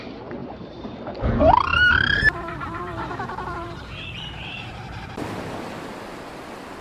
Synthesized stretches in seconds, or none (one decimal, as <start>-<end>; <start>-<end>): 0.4-1.1; 1.7-5.1